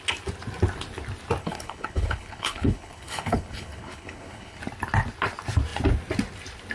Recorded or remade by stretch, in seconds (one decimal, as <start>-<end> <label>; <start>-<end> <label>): 0.0-1.4 recorded; 1.4-4.6 remade; 4.6-6.7 recorded